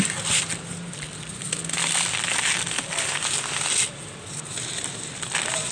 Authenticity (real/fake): real